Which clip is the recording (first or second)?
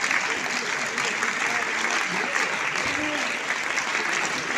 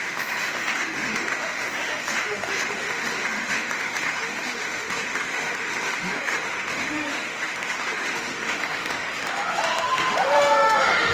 first